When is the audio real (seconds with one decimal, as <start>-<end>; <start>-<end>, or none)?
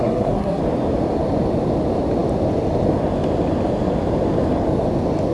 0.6-5.3